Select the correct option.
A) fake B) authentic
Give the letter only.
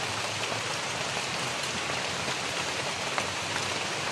B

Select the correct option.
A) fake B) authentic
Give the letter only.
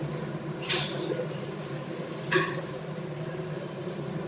B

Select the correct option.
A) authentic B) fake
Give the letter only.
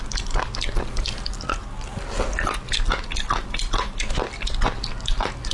A